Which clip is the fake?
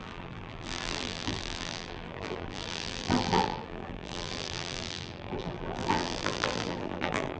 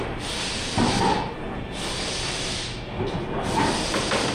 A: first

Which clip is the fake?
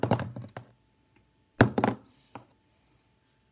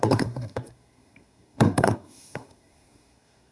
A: second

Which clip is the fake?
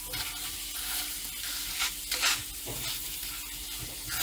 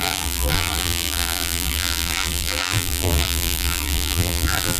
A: second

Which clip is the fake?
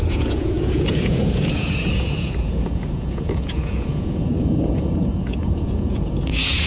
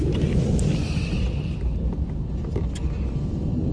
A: first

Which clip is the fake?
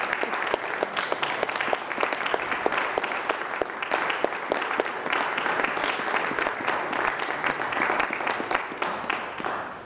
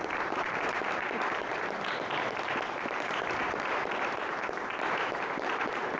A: second